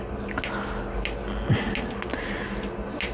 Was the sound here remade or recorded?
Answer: recorded